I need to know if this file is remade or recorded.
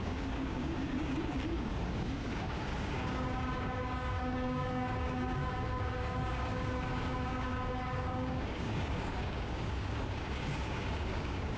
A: remade